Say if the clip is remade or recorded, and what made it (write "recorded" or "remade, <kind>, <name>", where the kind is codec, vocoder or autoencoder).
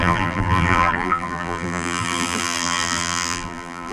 remade, vocoder, BigVGAN v2